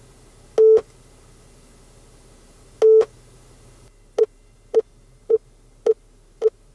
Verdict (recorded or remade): recorded